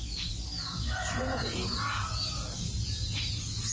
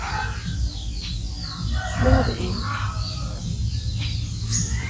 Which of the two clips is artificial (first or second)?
first